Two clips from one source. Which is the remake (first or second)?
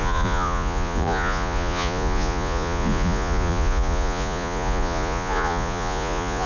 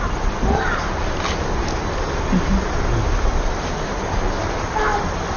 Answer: first